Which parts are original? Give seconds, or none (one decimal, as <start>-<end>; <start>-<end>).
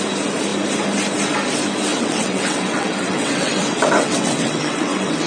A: 0.0-1.9